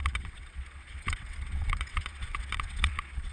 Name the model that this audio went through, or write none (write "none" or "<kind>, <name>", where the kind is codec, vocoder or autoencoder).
vocoder, WaveNeXt